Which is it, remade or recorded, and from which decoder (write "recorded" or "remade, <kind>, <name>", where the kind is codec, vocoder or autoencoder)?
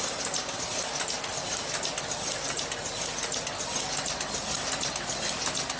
recorded